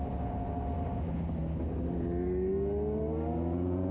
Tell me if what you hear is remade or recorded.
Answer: recorded